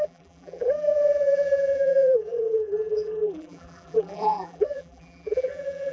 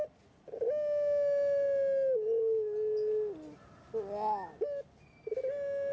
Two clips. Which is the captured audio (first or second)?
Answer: second